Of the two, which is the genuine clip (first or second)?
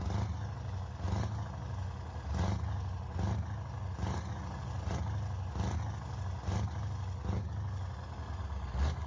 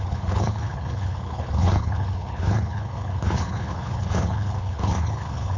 first